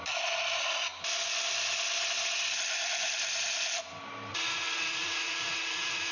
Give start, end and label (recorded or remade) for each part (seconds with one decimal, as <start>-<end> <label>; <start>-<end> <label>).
0.0-4.3 recorded; 4.3-6.1 remade